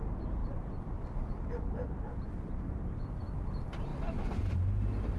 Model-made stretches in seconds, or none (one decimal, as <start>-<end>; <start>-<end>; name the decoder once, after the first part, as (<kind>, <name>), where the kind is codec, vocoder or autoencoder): none